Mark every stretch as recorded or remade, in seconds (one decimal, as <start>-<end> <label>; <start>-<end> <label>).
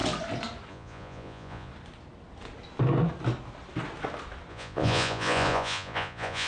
0.0-0.7 recorded; 0.7-1.7 remade; 1.7-4.5 recorded; 4.5-6.5 remade